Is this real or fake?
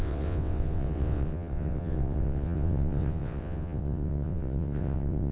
fake